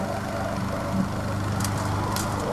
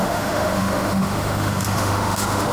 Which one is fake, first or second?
second